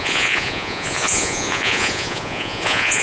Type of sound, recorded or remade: remade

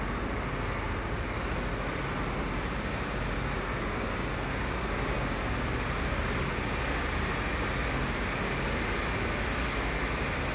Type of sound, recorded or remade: recorded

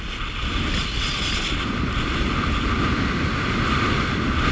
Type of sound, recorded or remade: recorded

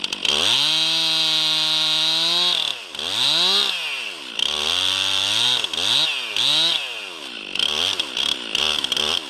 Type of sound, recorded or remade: recorded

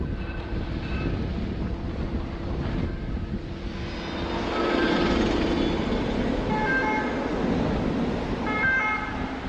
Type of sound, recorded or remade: recorded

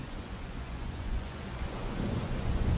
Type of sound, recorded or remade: remade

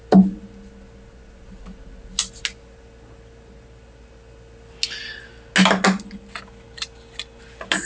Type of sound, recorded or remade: recorded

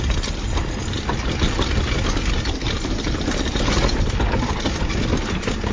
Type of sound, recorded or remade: recorded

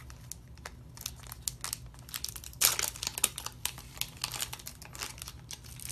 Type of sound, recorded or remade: recorded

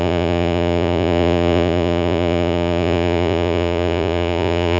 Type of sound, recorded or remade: remade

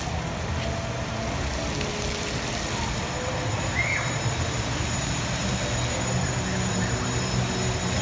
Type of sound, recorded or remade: recorded